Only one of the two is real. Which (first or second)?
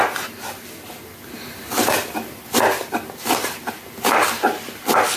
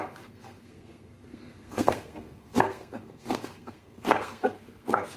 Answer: first